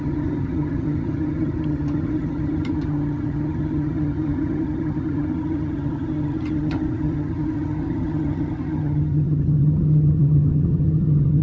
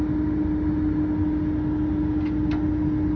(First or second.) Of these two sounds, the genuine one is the second